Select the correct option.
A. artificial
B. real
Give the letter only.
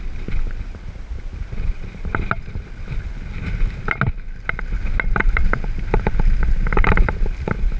B